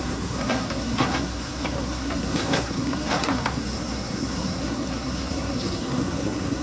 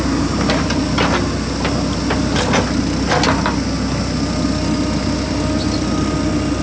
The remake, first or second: first